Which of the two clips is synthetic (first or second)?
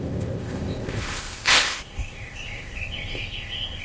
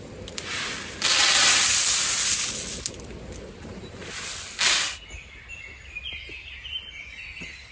first